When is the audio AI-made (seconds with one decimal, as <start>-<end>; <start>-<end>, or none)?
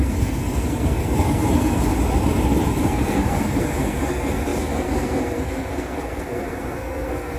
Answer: 0.0-1.8; 2.8-7.4